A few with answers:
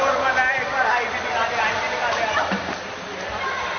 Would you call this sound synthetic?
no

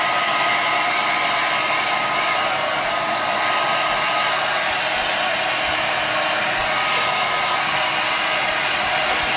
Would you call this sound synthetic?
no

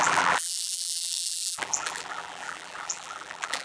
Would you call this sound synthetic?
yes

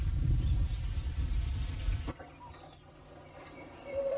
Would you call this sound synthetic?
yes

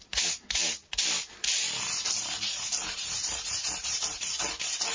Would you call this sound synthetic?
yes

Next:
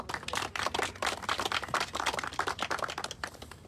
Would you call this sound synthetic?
no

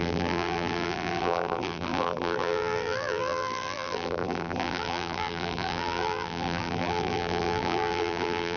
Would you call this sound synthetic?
yes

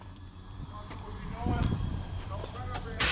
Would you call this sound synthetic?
yes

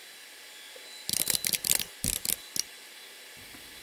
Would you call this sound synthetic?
no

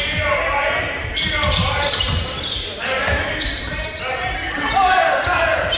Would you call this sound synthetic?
yes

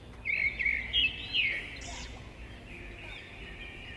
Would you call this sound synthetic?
no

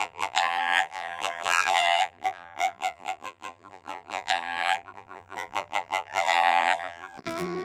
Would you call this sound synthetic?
yes